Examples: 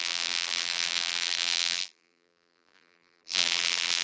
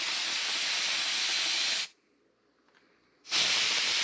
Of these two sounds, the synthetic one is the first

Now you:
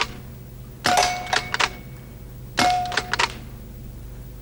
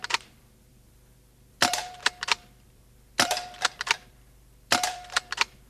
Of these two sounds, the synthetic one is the second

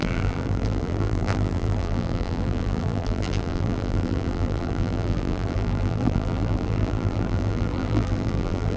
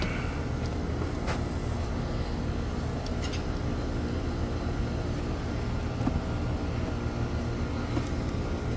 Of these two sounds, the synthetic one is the first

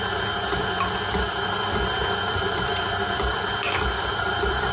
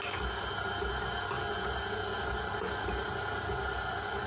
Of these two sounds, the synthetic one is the first